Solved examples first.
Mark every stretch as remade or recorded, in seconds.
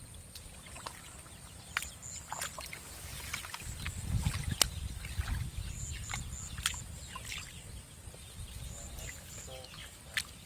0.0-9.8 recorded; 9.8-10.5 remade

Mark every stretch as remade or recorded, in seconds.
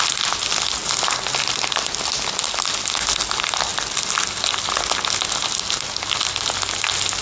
0.0-7.2 recorded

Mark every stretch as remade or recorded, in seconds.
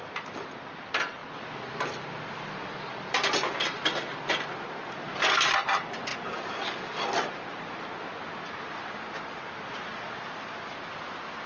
0.0-6.1 remade; 6.1-9.7 recorded; 9.7-11.5 remade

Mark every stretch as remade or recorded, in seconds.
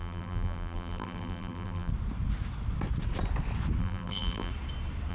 0.0-1.9 remade; 1.9-3.8 recorded; 3.8-4.5 remade; 4.5-5.1 recorded